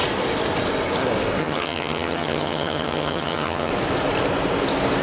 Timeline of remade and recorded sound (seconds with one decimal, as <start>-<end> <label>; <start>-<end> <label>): 0.0-1.4 recorded; 1.4-3.7 remade; 3.7-5.0 recorded